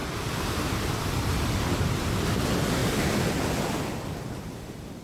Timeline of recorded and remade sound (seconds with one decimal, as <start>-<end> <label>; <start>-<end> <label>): 0.0-0.5 recorded; 0.5-2.8 remade; 2.8-3.6 recorded; 3.6-5.0 remade